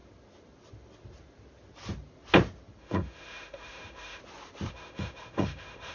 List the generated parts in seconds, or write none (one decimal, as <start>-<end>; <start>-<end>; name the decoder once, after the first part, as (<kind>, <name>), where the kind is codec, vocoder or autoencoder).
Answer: 2.8-4.2 (autoencoder, DAC-VAE); 4.7-5.9